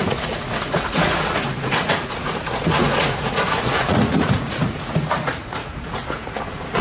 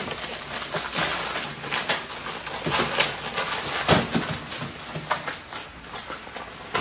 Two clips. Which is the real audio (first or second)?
second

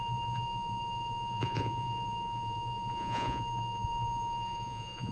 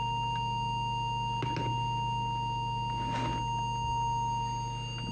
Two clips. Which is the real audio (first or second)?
second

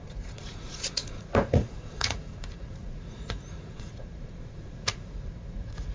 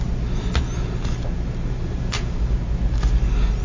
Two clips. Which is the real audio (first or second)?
second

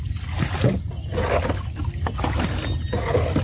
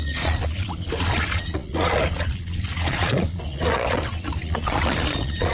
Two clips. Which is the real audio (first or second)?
first